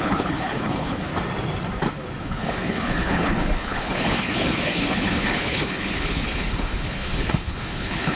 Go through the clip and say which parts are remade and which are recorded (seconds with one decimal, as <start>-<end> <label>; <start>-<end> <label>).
0.0-1.1 remade; 1.1-2.2 recorded; 2.2-8.2 remade